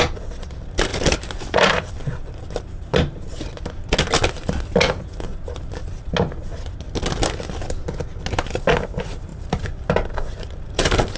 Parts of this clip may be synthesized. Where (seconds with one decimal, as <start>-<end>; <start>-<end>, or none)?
0.9-1.9; 9.3-11.2